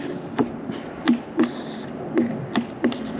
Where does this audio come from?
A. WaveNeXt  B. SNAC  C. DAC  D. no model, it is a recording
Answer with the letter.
D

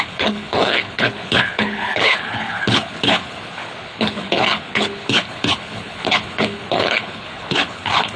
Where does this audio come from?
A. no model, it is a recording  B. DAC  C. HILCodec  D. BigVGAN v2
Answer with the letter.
C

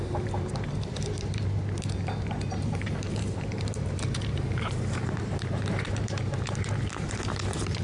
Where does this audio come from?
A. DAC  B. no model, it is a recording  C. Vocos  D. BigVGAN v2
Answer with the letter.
D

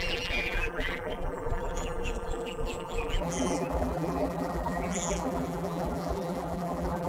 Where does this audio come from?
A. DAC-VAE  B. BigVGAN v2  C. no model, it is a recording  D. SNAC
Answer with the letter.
B